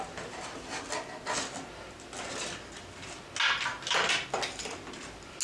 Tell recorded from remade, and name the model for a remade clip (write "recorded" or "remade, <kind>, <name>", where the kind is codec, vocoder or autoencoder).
recorded